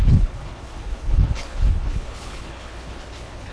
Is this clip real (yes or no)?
no